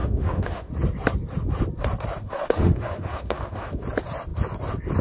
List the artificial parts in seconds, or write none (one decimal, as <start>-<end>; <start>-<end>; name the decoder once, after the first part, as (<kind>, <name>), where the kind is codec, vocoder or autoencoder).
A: 0.0-0.7 (autoencoder, DAC-VAE); 2.2-3.8